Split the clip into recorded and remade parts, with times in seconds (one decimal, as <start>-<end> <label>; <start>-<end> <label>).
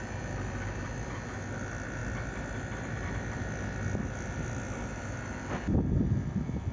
0.0-6.7 recorded